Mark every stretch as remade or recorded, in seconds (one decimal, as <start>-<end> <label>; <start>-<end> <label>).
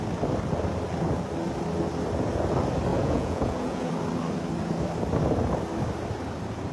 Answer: 0.0-2.9 recorded; 2.9-3.9 remade; 3.9-6.7 recorded